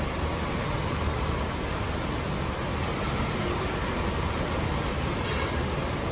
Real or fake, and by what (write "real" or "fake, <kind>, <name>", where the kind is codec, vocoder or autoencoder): real